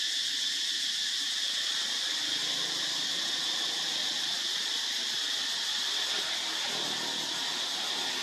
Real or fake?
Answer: real